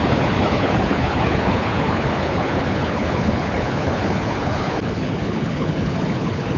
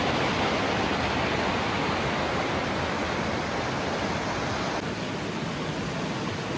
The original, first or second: second